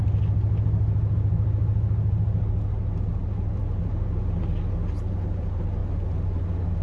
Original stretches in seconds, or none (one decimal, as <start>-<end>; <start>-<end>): 0.0-6.8